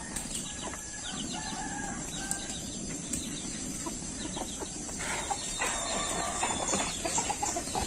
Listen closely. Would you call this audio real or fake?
fake